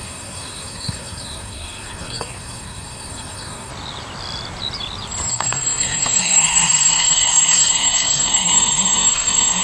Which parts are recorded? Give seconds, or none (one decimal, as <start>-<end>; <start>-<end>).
3.7-5.3